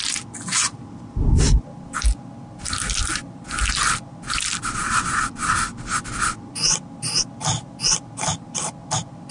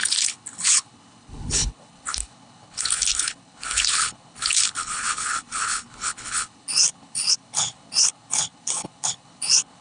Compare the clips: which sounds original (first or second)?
first